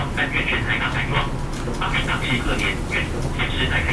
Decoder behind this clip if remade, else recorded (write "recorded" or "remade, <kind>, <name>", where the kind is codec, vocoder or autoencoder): recorded